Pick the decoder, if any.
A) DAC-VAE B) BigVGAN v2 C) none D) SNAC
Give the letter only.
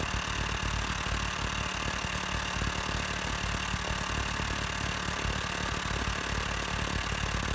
C